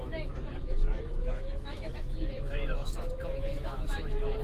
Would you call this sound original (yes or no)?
no